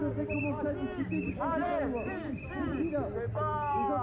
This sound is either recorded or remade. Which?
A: recorded